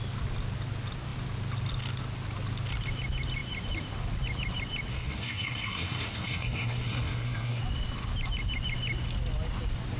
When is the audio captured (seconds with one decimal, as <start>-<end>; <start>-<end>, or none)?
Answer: 0.0-4.9; 7.6-10.0